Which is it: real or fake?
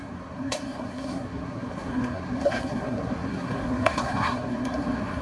fake